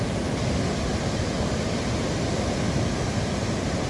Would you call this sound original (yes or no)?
yes